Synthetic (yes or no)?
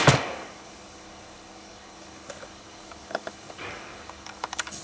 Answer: yes